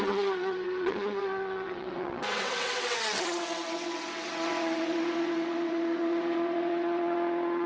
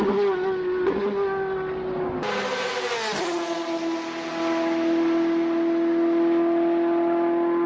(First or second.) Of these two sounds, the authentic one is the second